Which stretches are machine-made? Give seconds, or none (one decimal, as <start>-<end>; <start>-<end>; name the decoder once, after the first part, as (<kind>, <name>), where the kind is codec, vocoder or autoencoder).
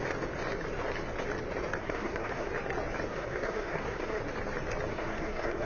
1.8-2.5 (codec, SNAC); 3.1-4.2; 4.9-5.7